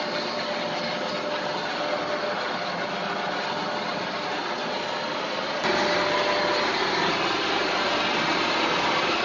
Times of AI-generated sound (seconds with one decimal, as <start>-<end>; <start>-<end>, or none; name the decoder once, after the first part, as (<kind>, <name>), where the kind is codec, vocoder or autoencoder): none

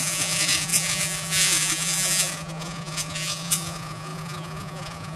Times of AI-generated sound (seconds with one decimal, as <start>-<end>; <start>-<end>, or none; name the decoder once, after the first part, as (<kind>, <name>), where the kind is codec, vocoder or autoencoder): 0.0-5.2 (vocoder, Vocos)

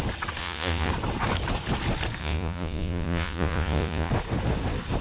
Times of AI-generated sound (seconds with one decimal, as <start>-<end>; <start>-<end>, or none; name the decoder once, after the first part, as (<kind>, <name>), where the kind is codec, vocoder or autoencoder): 0.4-0.9 (vocoder, Vocos); 2.2-4.1

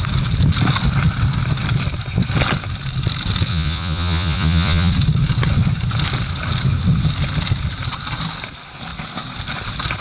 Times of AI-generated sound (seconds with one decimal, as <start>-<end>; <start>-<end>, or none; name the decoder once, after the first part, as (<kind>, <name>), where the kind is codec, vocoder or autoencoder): 3.5-4.9 (vocoder, Vocos)

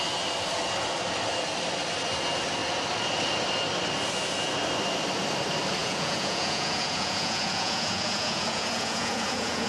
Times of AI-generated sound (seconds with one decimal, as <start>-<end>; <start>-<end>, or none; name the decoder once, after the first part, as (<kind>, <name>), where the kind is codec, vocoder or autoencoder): 5.8-9.7 (vocoder, Vocos)

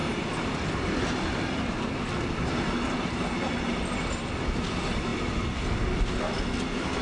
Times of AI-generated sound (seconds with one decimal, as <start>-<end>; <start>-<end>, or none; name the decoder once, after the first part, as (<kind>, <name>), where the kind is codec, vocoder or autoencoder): none

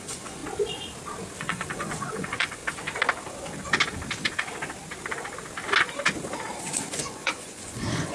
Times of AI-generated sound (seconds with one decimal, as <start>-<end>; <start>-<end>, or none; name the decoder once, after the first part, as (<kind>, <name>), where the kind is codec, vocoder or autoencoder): 0.0-0.4 (vocoder, Vocos); 1.4-2.6; 6.6-8.1